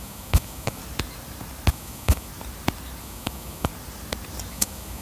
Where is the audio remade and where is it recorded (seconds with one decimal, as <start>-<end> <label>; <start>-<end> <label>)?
0.0-0.8 remade; 0.8-1.7 recorded; 1.7-2.3 remade; 2.3-3.0 recorded; 3.0-3.7 remade; 3.7-4.5 recorded; 4.5-5.0 remade